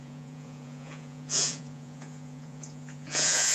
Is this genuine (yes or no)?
no